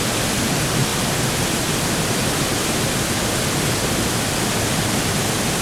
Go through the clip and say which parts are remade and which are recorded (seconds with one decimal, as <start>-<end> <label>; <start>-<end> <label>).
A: 0.0-5.6 recorded